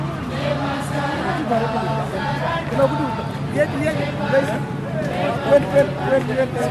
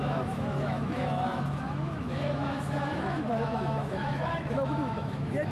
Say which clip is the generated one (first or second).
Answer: second